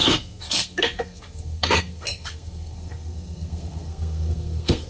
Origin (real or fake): fake